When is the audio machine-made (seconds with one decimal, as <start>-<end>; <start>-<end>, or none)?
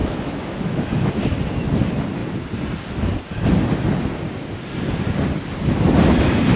0.0-1.1